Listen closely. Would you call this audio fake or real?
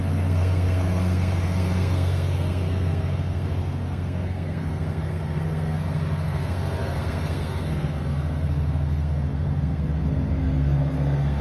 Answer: fake